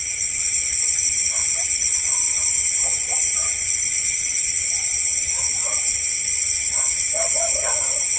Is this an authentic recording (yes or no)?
no